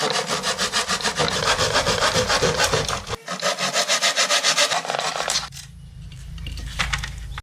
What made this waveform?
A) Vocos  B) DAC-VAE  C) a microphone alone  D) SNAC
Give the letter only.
C